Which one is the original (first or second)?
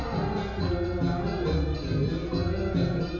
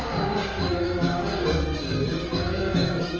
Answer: first